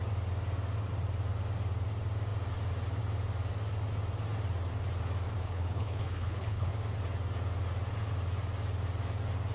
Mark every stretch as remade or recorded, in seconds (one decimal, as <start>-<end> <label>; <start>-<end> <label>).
0.0-5.4 recorded; 5.4-6.7 remade; 6.7-9.5 recorded